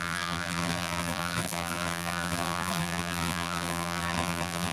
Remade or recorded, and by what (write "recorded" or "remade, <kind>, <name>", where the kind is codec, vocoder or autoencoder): remade, vocoder, BigVGAN v2